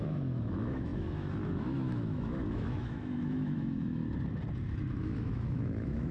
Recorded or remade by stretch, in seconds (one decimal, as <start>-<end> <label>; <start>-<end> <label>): 0.0-4.0 remade; 4.0-4.9 recorded; 4.9-6.1 remade